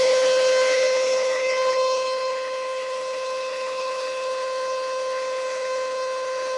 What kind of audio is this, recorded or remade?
remade